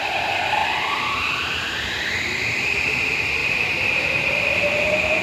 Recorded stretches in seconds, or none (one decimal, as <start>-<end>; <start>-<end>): 0.0-0.6; 2.1-3.4; 4.7-5.2

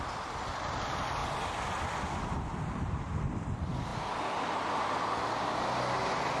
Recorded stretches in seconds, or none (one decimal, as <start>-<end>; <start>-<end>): 1.2-3.3; 3.9-5.3

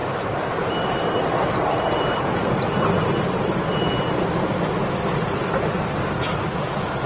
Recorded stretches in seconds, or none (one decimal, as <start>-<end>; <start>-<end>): 3.6-7.1